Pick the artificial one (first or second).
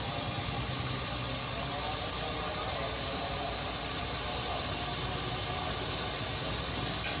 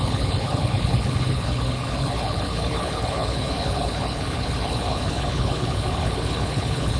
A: second